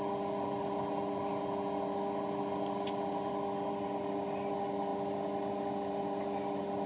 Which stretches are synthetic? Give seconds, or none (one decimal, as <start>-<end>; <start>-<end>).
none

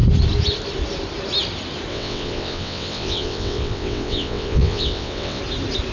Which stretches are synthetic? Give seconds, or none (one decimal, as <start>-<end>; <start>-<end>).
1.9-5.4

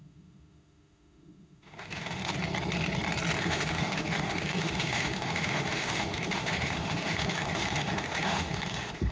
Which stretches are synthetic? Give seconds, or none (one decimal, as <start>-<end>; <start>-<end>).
0.0-2.2; 3.4-9.1

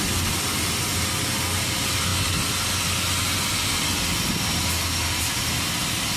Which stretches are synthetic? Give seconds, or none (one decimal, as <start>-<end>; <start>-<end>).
none